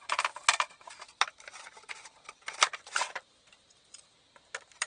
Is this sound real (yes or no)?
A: no